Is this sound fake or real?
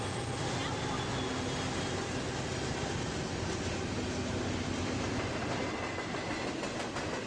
real